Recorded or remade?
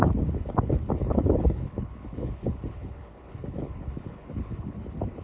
remade